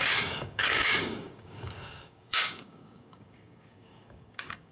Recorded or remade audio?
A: remade